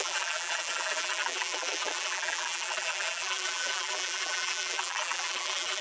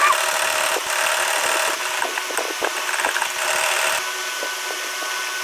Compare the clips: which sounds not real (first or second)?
first